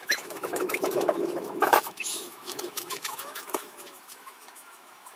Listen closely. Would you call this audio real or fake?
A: fake